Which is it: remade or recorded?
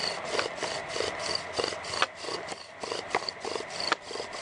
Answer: recorded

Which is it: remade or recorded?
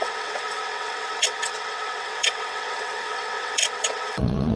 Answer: remade